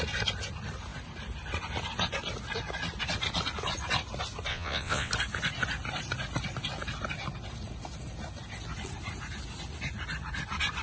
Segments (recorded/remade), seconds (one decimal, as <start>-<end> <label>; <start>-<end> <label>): 0.0-4.5 recorded; 4.5-5.1 remade; 5.1-10.8 recorded